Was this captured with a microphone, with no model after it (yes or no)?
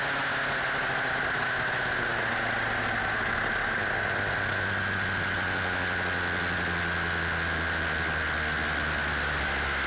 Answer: yes